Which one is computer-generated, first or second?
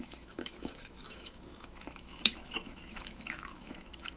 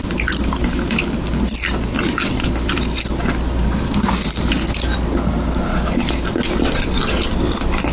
first